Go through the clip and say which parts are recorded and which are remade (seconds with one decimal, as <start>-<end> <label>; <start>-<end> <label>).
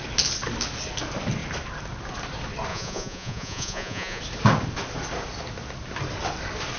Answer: 0.0-2.7 recorded; 2.7-4.2 remade; 4.2-6.8 recorded